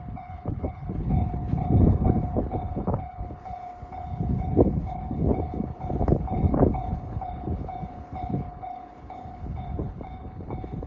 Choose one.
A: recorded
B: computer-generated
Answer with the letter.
B